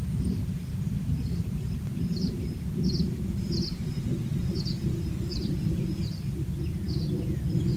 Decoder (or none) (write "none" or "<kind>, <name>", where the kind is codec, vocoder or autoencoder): none